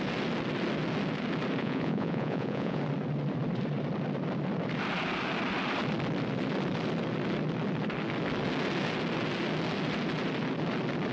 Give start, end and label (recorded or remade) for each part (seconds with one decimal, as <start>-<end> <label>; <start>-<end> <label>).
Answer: 0.0-1.6 recorded; 1.6-2.8 remade; 2.8-11.1 recorded